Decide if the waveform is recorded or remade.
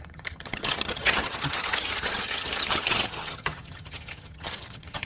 remade